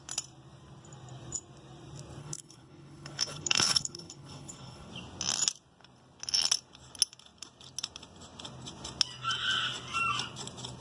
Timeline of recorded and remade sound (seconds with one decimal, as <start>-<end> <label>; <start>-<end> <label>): 0.0-2.2 recorded; 2.2-4.9 remade; 4.9-10.8 recorded